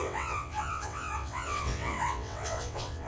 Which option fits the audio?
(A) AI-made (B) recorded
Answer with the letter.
A